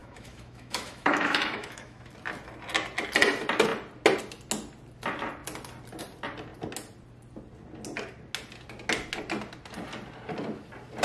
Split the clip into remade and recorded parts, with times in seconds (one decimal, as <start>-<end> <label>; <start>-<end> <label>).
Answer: 0.0-2.1 remade; 2.1-11.0 recorded